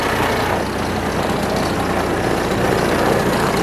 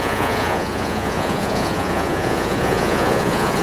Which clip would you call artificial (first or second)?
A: second